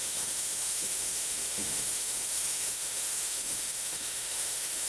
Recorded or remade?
remade